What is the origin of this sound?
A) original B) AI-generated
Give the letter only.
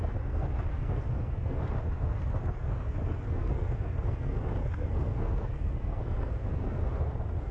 B